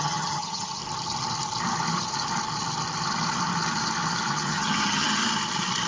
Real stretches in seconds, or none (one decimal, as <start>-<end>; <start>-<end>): 0.8-4.3; 5.2-5.9